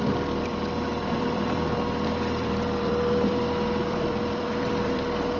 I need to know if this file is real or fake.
fake